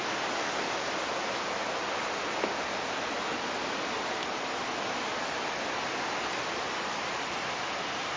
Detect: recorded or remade recorded